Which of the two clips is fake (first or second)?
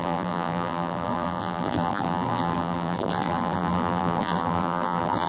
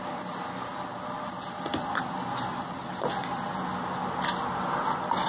first